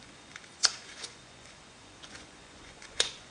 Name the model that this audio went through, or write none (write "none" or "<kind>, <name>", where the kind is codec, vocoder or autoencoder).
vocoder, Vocos